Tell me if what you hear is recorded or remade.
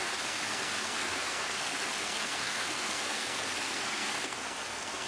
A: remade